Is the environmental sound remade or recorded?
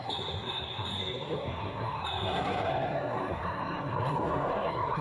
remade